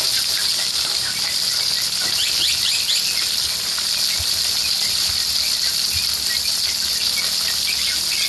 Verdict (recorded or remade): recorded